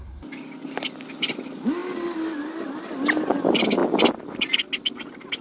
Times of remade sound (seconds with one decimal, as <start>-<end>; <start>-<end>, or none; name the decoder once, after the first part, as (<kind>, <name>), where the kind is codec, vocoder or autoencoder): none